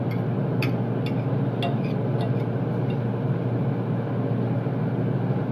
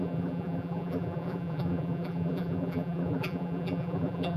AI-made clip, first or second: second